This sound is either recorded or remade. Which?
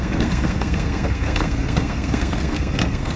remade